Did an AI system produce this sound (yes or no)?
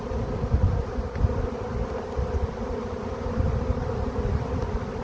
no